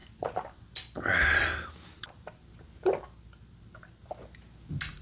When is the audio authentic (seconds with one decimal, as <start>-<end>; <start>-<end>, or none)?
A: 0.0-5.0